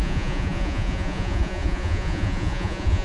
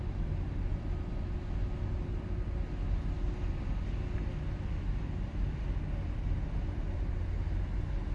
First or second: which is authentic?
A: second